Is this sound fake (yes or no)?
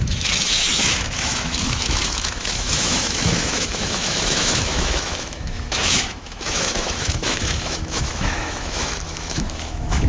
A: yes